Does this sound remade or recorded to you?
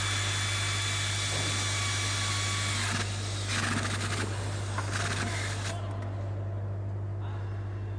recorded